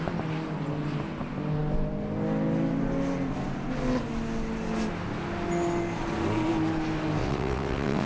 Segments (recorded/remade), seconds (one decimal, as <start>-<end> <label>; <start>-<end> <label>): 0.0-7.2 recorded; 7.2-8.1 remade